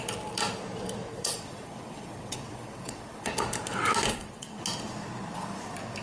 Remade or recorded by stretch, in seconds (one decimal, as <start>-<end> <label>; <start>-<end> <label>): 0.0-1.1 recorded; 1.1-3.3 remade; 3.3-4.1 recorded; 4.1-4.6 remade; 4.6-6.0 recorded